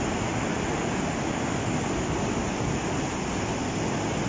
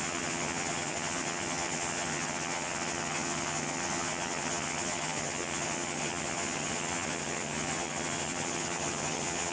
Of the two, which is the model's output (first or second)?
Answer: second